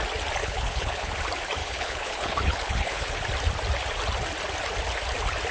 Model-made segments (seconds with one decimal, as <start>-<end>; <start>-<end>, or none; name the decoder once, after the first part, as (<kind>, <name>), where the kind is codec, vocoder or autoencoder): 0.4-1.1 (codec, HILCodec); 1.6-3.1